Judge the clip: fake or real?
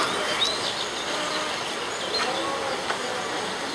real